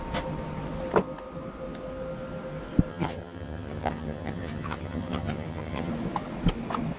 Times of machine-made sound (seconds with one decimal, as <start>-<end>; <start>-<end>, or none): 2.9-5.9